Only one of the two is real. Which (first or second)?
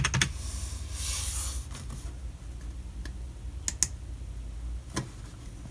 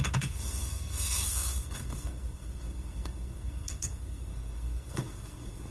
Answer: first